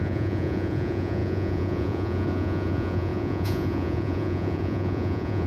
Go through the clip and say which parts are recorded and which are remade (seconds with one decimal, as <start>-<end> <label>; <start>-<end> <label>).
0.0-5.5 remade